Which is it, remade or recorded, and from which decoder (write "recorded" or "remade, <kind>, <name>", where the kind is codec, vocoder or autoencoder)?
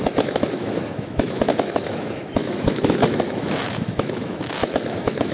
remade, autoencoder, DAC-VAE